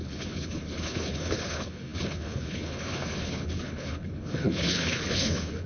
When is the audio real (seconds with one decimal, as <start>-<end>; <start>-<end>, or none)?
none

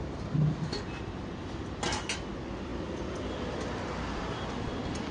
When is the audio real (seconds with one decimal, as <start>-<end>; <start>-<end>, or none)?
0.0-5.1

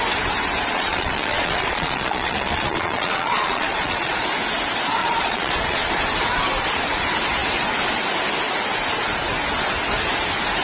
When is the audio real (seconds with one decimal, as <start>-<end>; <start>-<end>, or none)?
0.0-0.7; 4.1-5.0; 5.9-10.6